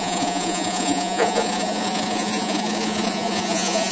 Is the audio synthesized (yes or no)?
yes